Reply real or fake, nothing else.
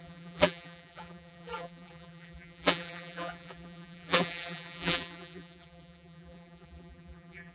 fake